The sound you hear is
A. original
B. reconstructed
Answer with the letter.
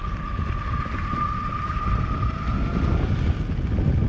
A